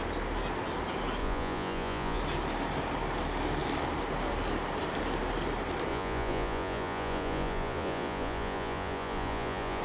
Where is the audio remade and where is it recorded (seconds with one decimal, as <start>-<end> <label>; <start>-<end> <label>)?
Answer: 0.0-1.2 recorded; 1.2-2.2 remade; 2.2-5.9 recorded; 5.9-9.8 remade